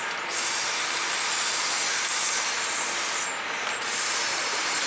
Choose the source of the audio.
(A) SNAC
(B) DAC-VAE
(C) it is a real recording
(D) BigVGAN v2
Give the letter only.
D